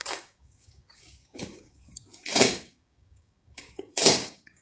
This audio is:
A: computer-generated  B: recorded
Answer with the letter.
A